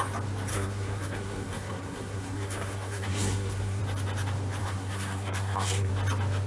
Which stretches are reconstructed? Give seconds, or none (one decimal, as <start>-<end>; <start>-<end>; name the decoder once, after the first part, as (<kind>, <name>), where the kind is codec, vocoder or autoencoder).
0.5-3.8 (codec, SNAC); 4.6-5.9